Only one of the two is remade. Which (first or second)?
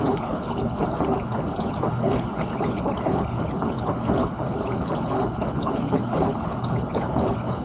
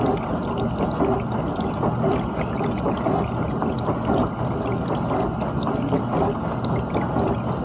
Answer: first